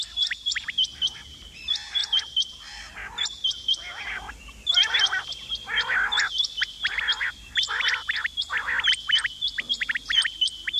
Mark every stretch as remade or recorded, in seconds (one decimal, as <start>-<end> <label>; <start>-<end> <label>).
0.0-10.8 recorded